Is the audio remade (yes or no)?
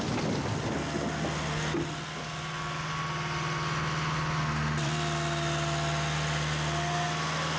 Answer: no